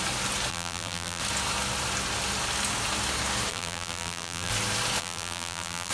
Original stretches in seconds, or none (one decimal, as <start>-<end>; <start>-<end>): 0.0-0.5; 1.2-3.5; 4.5-5.0